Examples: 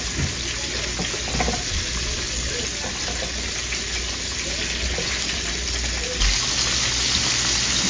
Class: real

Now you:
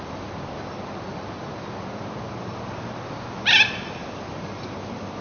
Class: real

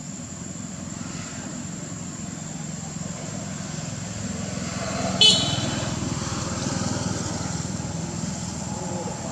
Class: real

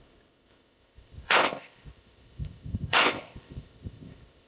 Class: fake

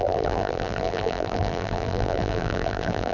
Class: fake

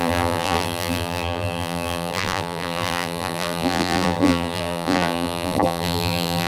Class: fake